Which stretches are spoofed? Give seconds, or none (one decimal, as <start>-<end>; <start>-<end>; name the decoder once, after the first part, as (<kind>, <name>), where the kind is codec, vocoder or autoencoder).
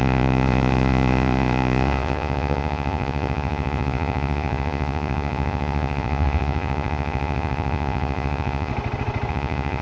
0.0-8.7 (vocoder, Vocos); 9.3-9.8